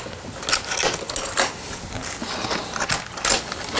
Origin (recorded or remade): recorded